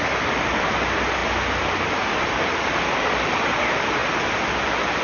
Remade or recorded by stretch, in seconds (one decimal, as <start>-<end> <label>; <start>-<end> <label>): 0.0-5.0 recorded